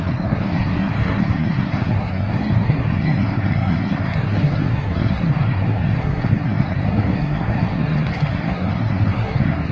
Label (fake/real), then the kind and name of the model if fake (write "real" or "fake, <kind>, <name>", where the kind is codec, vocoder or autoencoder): fake, codec, SNAC